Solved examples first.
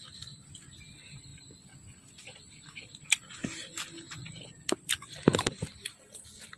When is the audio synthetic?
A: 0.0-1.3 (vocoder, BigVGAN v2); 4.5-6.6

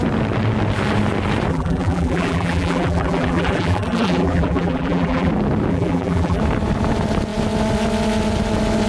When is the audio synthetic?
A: 1.5-5.3 (vocoder, BigVGAN v2); 5.7-6.4

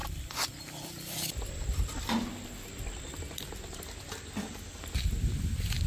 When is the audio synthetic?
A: 0.0-2.0 (vocoder, BigVGAN v2)